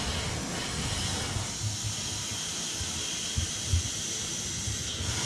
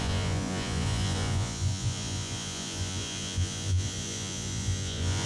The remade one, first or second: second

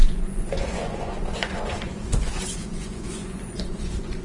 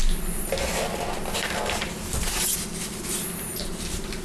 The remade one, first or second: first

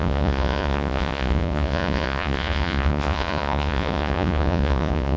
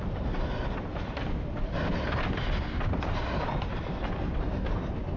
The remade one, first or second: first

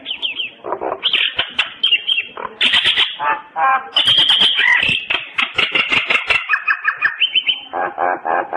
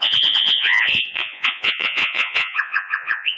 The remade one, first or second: second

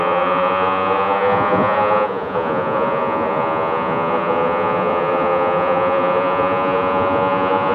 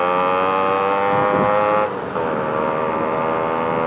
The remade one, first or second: first